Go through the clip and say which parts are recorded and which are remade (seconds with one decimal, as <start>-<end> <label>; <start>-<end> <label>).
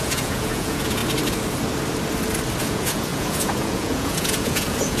0.0-1.0 remade; 1.0-2.6 recorded; 2.6-5.0 remade